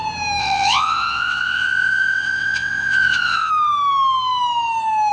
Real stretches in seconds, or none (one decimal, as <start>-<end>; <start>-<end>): 0.0-0.4; 3.5-5.1

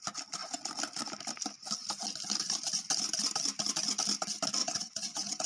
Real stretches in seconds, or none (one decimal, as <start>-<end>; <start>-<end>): 0.0-4.6

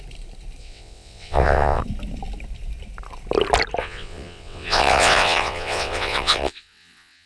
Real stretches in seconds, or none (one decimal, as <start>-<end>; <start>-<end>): 0.0-0.6; 1.8-3.8

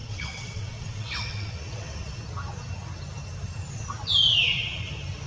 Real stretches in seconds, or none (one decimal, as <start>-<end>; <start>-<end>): 2.2-5.3

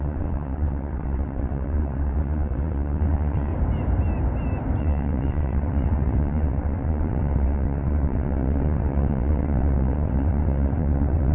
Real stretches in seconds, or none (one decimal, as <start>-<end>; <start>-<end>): 3.5-4.8

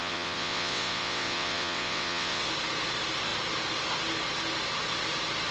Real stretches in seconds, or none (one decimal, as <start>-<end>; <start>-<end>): 2.4-5.5

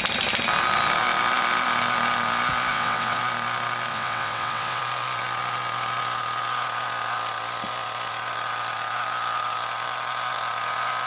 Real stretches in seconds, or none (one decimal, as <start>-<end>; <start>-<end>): 0.0-2.7; 3.2-3.9; 4.8-11.1